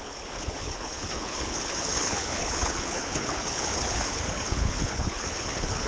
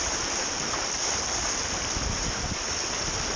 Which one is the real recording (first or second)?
second